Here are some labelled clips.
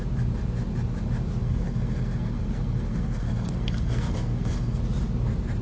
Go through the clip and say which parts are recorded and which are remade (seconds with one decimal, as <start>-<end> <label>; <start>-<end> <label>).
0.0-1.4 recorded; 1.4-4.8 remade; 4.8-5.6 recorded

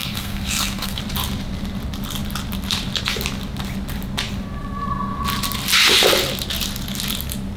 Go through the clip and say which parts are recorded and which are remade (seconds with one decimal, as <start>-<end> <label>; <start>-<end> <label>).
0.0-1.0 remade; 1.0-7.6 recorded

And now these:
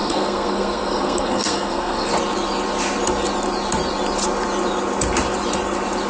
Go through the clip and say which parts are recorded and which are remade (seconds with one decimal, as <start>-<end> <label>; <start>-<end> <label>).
0.0-2.1 remade; 2.1-6.1 recorded